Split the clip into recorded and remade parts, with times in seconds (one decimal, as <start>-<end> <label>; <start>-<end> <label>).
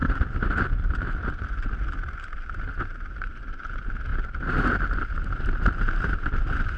0.0-3.6 remade; 3.6-4.1 recorded; 4.1-4.8 remade; 4.8-6.8 recorded